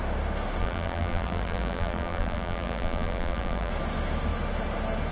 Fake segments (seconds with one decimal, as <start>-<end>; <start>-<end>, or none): 0.6-3.7

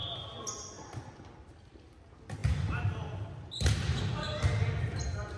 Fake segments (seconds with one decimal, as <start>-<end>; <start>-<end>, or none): 2.4-3.5

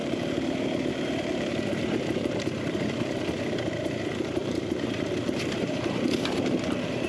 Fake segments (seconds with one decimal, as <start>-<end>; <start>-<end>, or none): 0.0-2.9; 4.4-7.1